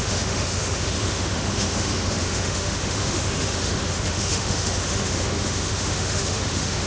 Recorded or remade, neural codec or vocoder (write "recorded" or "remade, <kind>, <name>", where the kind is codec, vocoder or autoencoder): remade, autoencoder, DAC-VAE